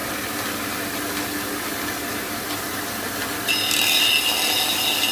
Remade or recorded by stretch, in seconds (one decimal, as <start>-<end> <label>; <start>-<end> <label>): 0.0-5.1 recorded